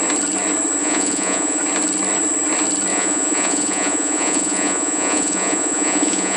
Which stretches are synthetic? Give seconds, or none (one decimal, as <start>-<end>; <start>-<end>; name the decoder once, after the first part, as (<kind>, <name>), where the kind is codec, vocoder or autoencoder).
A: 0.8-1.6 (vocoder, Vocos); 2.9-6.4